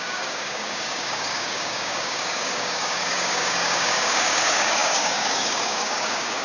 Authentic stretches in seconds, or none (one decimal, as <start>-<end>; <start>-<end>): none

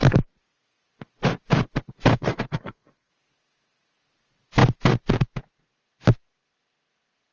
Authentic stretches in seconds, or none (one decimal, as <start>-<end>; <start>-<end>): 0.0-2.1; 3.1-7.3

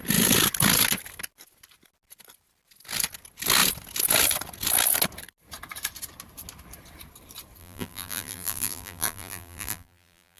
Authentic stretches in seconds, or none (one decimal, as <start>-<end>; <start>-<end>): 0.0-7.6